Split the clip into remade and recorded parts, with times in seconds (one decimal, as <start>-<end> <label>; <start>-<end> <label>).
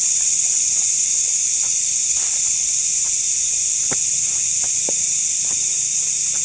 0.0-0.8 recorded; 0.8-1.5 remade; 1.5-5.3 recorded; 5.3-6.4 remade